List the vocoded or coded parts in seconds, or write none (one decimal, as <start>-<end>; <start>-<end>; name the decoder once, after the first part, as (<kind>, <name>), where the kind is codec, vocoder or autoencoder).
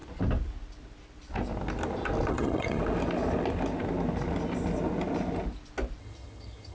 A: 2.3-2.8 (vocoder, HiFi-GAN); 6.0-6.7